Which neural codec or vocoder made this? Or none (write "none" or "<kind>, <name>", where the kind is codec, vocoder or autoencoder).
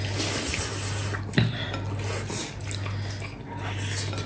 none